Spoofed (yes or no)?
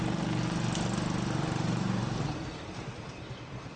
no